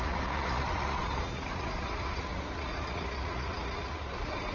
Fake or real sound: fake